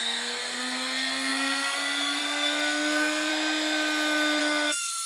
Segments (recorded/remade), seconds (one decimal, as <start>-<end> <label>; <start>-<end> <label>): 0.0-3.3 remade; 3.3-4.4 recorded; 4.4-5.1 remade